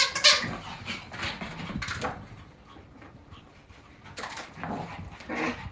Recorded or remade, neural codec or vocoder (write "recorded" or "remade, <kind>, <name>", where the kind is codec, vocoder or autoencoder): recorded